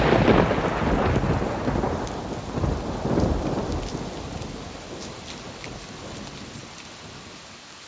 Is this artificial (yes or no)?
no